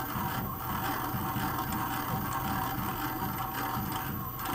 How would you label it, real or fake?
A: real